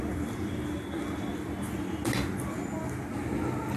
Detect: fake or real real